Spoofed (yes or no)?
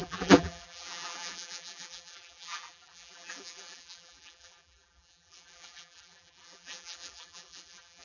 yes